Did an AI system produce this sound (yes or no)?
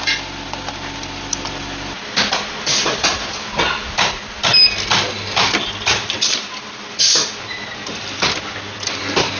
no